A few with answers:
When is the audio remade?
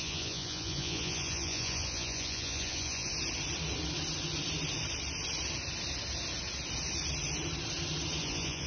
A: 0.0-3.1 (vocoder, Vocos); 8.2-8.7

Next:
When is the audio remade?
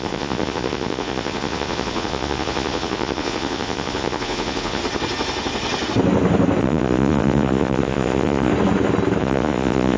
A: 0.0-4.8 (vocoder, Vocos); 6.6-8.5; 9.2-10.0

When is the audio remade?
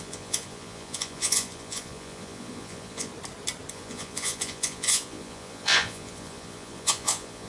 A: 0.0-3.1 (vocoder, Vocos); 3.7-7.5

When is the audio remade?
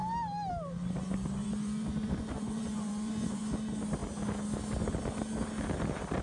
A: 1.4-3.4 (vocoder, Vocos)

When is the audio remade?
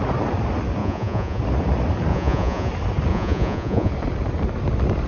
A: 0.8-1.4 (vocoder, Vocos); 2.1-2.7; 3.1-3.9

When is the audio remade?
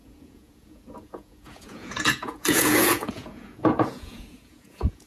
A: 0.0-5.1 (vocoder, Vocos)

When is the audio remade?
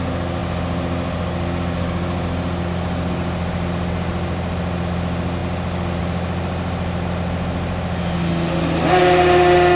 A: none